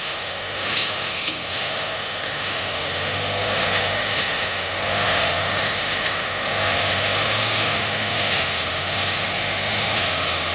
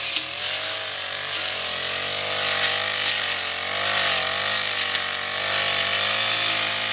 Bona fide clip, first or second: second